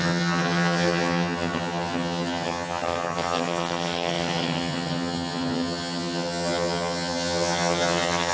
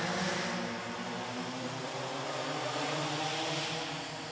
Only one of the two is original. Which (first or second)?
second